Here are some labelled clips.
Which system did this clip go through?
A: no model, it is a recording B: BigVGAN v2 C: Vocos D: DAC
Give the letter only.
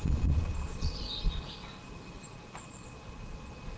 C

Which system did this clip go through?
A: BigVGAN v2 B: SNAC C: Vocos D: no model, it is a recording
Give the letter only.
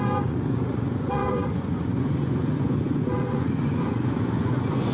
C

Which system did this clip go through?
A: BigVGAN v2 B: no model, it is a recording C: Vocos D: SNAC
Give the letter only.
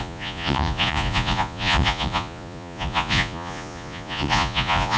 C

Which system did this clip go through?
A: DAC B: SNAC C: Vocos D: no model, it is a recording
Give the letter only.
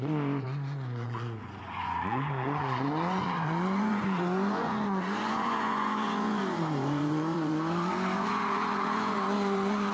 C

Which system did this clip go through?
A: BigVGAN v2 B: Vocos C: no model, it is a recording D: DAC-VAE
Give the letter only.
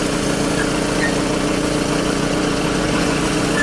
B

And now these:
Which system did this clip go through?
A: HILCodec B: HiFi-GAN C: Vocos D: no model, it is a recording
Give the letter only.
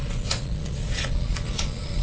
C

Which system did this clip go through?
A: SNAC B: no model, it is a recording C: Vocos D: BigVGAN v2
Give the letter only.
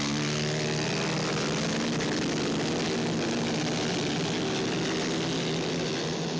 B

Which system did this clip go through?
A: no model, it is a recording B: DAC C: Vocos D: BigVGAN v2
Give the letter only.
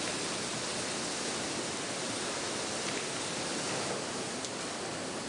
A